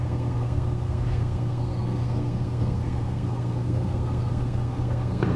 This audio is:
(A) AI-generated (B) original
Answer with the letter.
A